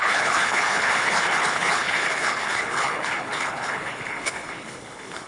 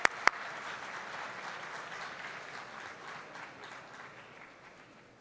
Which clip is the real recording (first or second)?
second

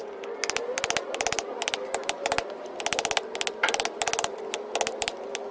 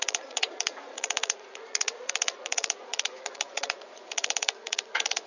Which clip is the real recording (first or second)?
first